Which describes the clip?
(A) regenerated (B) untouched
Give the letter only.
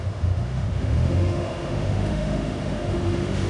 A